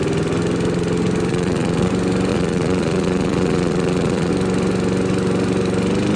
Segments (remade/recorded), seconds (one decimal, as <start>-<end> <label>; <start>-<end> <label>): 0.0-1.3 recorded; 1.3-1.9 remade; 1.9-2.3 recorded; 2.3-4.3 remade; 4.3-6.2 recorded